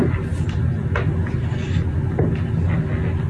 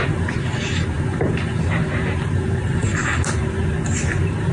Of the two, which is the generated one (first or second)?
second